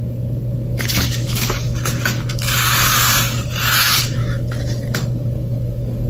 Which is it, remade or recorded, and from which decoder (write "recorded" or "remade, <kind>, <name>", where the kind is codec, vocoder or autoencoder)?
remade, codec, DAC